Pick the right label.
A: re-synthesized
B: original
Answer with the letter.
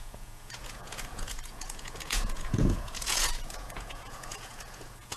A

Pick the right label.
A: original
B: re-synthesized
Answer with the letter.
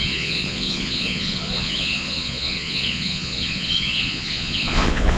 B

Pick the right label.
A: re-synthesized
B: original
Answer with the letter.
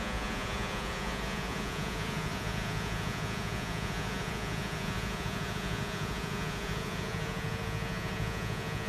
A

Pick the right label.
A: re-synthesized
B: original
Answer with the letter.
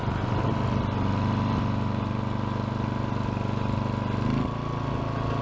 B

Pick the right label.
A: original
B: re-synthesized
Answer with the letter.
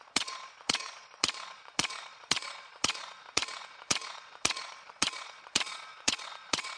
B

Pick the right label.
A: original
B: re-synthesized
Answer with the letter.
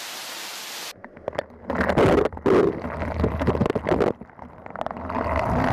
A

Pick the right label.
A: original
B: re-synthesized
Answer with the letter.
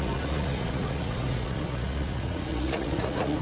B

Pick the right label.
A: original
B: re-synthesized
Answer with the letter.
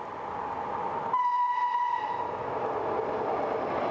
A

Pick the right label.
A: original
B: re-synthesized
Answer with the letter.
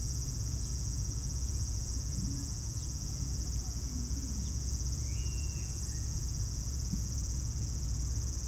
B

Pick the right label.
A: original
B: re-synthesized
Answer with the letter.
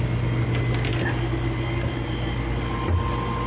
A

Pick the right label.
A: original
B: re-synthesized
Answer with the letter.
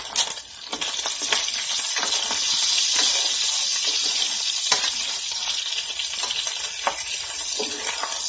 A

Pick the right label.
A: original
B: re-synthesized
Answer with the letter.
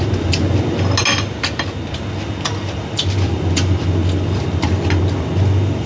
A